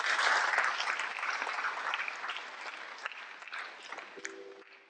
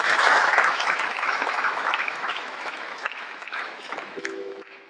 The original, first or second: first